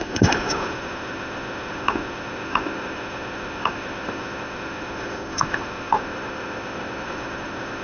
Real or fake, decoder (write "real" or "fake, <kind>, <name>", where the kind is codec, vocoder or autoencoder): fake, autoencoder, DAC-VAE